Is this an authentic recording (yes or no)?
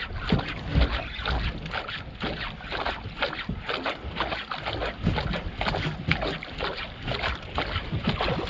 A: yes